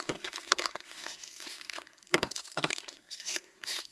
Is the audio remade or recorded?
remade